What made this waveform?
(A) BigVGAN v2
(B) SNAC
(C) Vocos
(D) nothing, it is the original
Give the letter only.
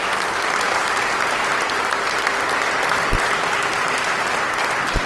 D